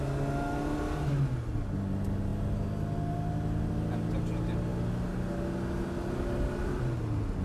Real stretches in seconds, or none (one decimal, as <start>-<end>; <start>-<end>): 0.0-7.4